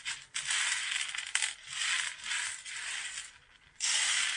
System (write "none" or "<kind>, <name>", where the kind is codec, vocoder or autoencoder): none